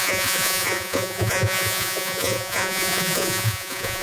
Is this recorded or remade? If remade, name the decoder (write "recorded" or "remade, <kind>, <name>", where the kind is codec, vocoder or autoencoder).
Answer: remade, vocoder, Vocos